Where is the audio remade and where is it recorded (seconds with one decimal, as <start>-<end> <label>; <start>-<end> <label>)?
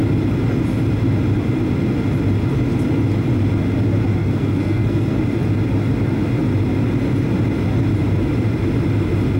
0.0-4.2 recorded; 4.2-5.2 remade; 5.2-9.4 recorded